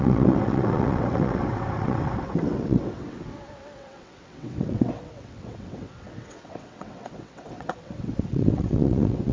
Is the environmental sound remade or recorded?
remade